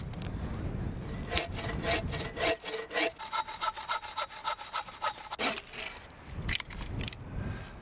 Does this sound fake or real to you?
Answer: real